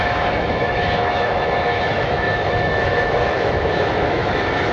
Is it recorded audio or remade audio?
remade